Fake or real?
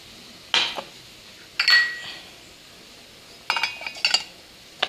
real